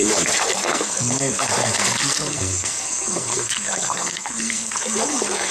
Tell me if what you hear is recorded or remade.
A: remade